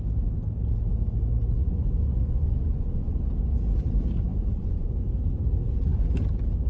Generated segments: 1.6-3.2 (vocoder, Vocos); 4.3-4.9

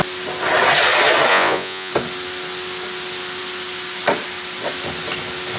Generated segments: 1.3-1.9 (vocoder, Vocos)

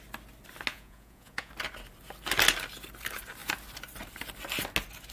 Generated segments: 0.7-1.5 (vocoder, Vocos)

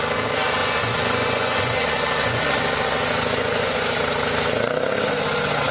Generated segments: 0.6-4.0 (vocoder, Vocos)